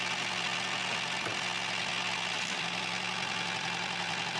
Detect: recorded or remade recorded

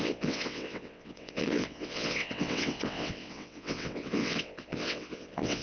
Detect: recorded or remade remade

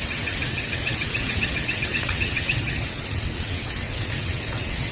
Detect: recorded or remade remade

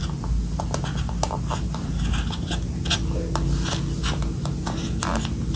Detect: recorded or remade recorded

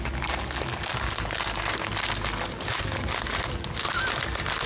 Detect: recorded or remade recorded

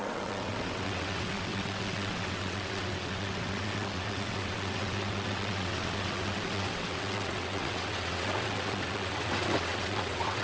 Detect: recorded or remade remade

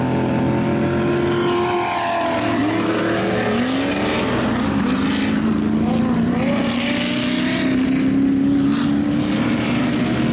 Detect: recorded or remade recorded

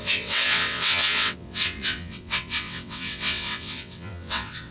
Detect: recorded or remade remade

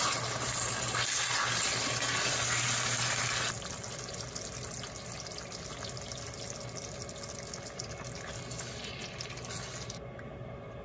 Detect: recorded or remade recorded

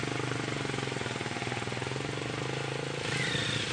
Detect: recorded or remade recorded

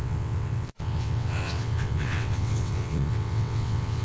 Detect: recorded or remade remade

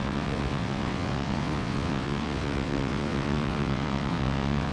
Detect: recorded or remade remade